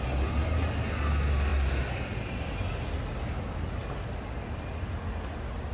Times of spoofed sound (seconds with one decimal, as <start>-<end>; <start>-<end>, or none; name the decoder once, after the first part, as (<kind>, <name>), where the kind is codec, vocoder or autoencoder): 1.5-2.4 (vocoder, BigVGAN v2)